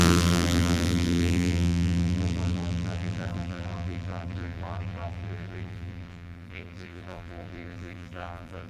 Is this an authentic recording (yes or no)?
no